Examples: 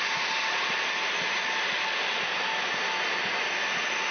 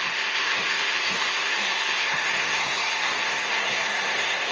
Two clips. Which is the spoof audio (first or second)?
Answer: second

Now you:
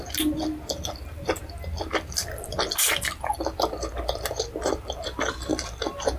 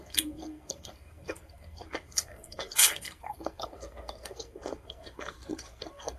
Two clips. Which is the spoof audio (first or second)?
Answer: second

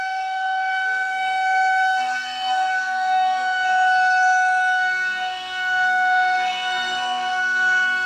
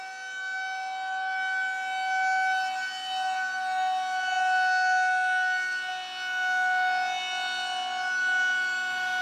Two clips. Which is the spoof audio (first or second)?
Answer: first